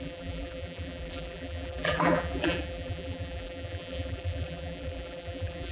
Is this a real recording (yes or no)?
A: no